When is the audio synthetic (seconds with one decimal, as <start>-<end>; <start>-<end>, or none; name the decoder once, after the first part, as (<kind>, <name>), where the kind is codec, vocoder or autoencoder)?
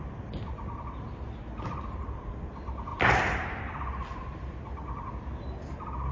none